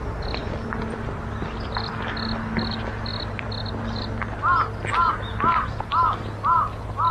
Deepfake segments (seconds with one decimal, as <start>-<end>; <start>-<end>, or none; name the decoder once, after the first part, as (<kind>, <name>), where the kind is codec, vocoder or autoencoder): 0.4-1.3 (vocoder, BigVGAN v2); 3.1-3.7